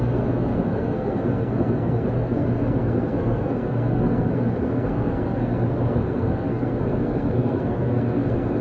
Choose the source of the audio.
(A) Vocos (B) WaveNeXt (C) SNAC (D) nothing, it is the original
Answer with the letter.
C